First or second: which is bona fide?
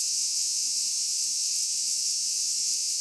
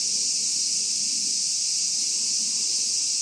second